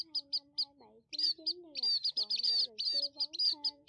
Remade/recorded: recorded